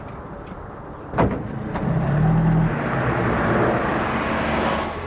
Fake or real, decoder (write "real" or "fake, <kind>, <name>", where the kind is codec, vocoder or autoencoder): real